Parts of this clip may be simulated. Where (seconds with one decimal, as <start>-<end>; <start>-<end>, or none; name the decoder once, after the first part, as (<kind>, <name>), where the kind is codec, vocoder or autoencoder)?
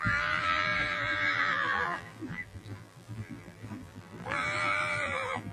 0.0-5.5 (vocoder, BigVGAN v2)